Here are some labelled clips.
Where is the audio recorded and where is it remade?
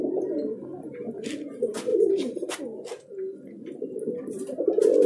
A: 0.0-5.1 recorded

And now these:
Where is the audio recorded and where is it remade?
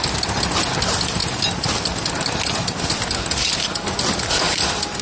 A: 0.0-5.0 recorded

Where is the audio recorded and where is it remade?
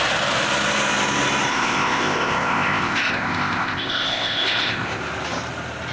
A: 0.0-1.5 recorded; 1.5-5.0 remade; 5.0-5.9 recorded